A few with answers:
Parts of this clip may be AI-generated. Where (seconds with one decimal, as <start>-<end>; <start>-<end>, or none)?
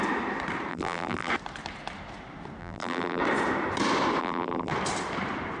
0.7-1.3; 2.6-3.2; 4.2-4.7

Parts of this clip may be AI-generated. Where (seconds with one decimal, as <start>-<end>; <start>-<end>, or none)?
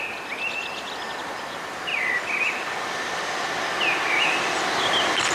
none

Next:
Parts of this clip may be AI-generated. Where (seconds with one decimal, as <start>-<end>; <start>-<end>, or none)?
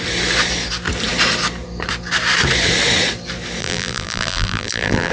3.6-5.1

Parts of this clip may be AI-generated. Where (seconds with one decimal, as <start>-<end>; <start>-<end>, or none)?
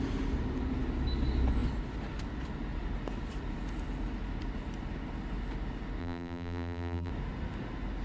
6.0-7.1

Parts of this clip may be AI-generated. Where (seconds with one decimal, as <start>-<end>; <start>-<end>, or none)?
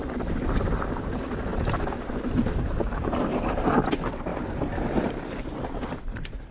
0.0-1.5; 2.1-4.3; 5.0-6.5